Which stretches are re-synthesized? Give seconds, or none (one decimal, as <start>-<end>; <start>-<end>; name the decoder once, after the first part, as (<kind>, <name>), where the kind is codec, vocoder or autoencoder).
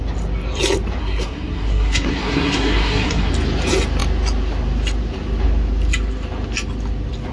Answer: 1.0-3.3 (codec, SNAC)